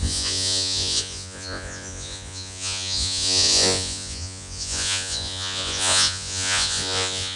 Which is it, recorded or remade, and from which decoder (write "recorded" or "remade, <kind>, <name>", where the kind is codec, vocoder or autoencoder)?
remade, vocoder, Vocos